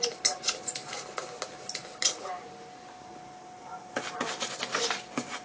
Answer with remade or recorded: recorded